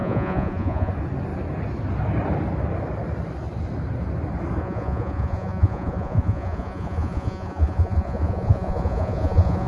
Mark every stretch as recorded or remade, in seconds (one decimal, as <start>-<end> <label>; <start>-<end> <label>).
0.0-0.9 remade; 0.9-4.6 recorded; 4.6-9.7 remade